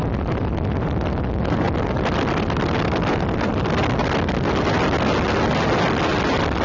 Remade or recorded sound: recorded